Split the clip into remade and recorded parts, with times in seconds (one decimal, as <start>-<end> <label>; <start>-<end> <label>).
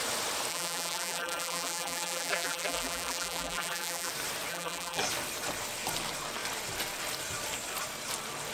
0.0-0.5 recorded; 0.5-4.1 remade; 4.1-4.5 recorded; 4.5-5.0 remade; 5.0-8.5 recorded